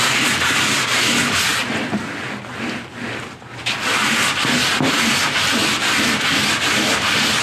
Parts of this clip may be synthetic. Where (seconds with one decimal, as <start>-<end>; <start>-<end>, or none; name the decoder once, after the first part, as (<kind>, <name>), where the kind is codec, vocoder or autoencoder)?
none